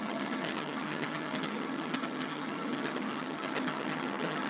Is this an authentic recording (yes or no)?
no